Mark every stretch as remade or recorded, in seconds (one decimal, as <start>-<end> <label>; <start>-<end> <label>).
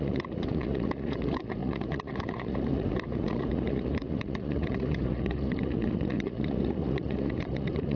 0.0-8.0 remade